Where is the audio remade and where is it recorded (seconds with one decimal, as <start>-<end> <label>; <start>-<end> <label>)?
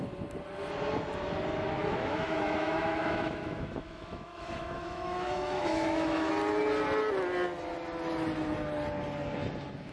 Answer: 0.0-1.8 recorded; 1.8-6.3 remade; 6.3-9.9 recorded